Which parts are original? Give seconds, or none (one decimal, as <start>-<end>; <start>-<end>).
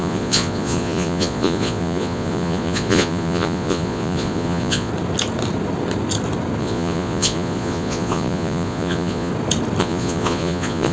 4.9-6.6; 9.3-9.8